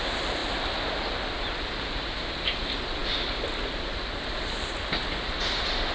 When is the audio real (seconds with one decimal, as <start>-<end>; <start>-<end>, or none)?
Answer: 0.0-5.9